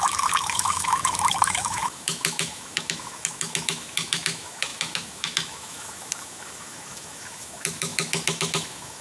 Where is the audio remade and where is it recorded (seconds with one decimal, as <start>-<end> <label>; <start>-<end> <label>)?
0.0-9.0 remade